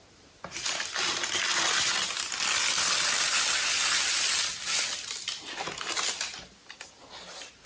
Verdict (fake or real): real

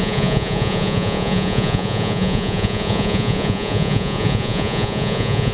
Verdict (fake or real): fake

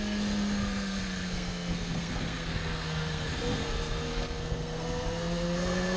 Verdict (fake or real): fake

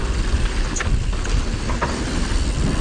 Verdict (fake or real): real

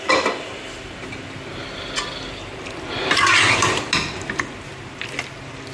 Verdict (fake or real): real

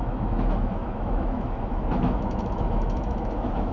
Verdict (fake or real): fake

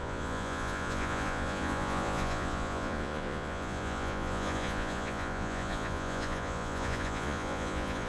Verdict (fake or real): fake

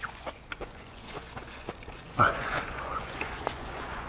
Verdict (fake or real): fake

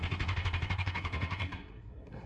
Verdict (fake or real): fake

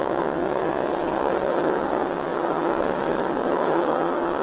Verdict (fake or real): fake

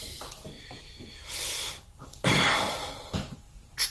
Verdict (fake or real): real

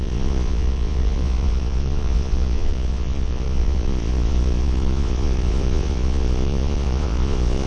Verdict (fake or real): fake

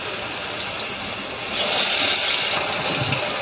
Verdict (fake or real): real